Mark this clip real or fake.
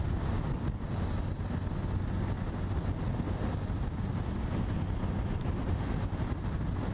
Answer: real